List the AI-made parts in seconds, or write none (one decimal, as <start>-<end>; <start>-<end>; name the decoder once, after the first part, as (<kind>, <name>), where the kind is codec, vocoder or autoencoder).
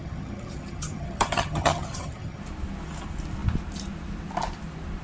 0.0-2.4 (vocoder, HiFi-GAN)